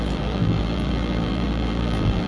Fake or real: fake